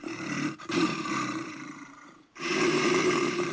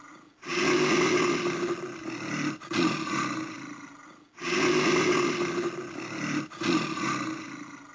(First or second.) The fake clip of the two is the first